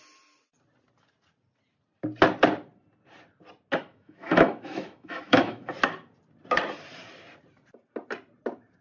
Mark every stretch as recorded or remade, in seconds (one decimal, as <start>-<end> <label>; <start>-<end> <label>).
0.0-3.9 recorded; 3.9-5.7 remade; 5.7-8.8 recorded